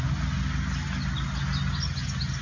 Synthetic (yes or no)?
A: no